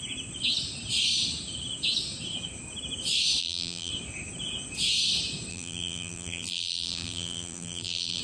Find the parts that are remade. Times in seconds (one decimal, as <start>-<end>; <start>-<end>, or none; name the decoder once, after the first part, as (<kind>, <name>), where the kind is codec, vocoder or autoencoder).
3.4-3.9 (vocoder, BigVGAN v2); 5.5-8.2